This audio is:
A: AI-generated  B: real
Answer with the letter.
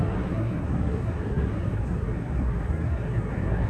A